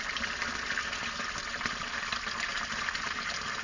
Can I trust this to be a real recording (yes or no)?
yes